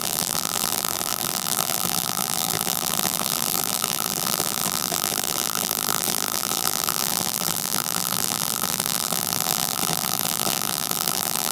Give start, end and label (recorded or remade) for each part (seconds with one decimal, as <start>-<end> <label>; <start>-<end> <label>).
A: 0.0-11.5 remade